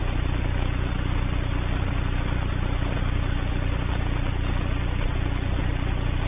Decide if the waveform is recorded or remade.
recorded